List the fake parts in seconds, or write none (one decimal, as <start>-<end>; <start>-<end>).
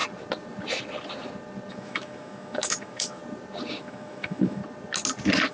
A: 1.7-3.2; 3.8-4.6